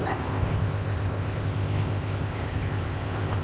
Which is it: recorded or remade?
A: remade